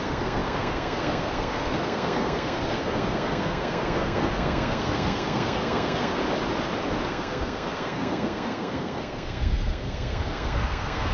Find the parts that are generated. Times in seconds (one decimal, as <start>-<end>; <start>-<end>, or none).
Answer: 0.0-6.2; 7.0-11.1